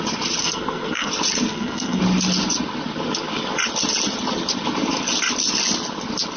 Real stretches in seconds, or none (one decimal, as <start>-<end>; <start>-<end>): 0.0-0.4; 1.1-1.5; 2.0-6.4